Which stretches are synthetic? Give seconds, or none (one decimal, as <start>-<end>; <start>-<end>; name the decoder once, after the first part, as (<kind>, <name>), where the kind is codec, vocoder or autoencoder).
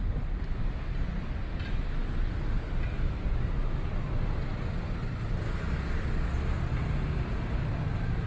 none